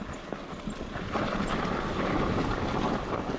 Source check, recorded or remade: recorded